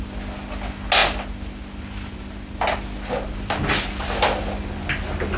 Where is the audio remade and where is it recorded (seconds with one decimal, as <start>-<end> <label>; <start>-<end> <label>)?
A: 0.0-5.4 recorded